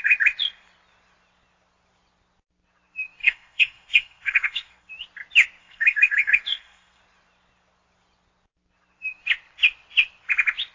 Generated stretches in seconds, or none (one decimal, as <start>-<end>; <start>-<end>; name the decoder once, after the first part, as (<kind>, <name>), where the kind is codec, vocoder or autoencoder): 3.2-4.9 (codec, SNAC); 5.6-7.0